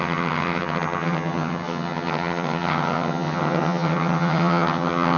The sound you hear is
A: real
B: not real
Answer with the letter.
B